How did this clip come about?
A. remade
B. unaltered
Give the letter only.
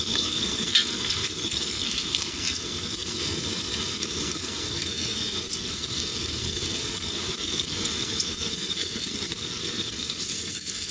A